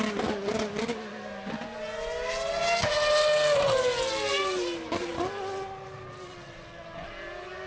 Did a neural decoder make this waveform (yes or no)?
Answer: no